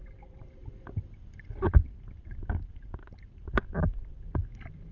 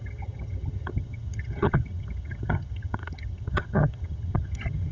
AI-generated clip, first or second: second